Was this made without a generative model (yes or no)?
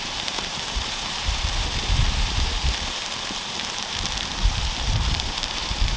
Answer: no